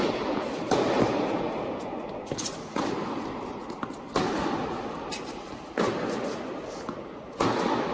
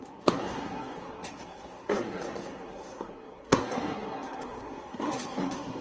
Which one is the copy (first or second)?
second